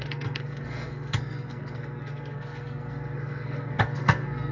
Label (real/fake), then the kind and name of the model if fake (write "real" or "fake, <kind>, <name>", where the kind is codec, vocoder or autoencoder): fake, codec, SNAC